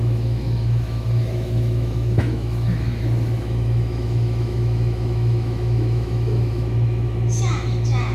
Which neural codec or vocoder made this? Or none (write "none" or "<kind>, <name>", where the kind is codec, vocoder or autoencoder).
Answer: autoencoder, DAC-VAE